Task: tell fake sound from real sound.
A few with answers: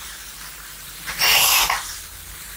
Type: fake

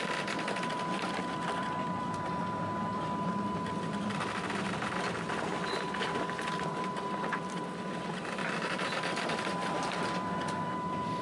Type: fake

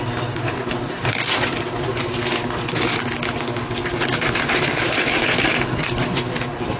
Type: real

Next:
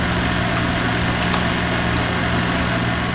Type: real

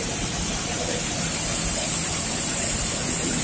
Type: fake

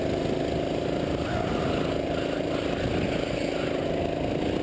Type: real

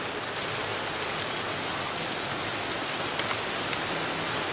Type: real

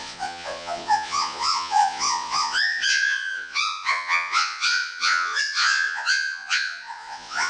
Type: fake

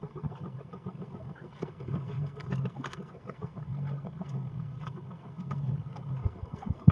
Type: fake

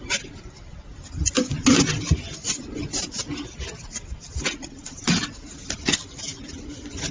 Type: real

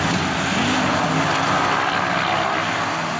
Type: real